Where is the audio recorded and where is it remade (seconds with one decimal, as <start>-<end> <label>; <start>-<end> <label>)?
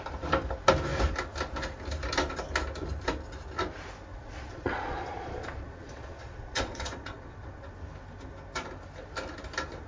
0.0-4.1 recorded; 4.1-7.7 remade; 7.7-9.9 recorded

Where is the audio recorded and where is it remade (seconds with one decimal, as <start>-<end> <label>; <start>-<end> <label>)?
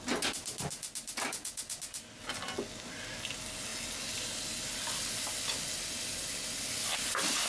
0.0-1.3 recorded; 1.3-1.8 remade; 1.8-7.5 recorded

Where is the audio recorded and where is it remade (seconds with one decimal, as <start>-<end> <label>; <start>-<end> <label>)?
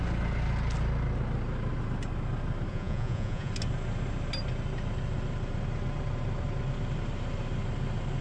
0.0-2.7 recorded; 2.7-3.5 remade; 3.5-8.2 recorded